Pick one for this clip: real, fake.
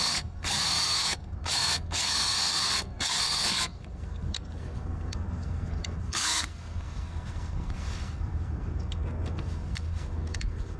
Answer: fake